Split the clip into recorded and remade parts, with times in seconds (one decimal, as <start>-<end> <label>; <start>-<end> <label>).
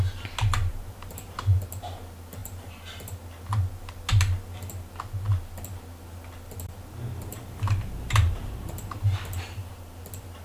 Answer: 0.0-0.7 recorded; 0.7-1.6 remade; 1.6-2.4 recorded; 2.4-3.2 remade; 3.2-7.3 recorded; 7.3-9.7 remade; 9.7-10.4 recorded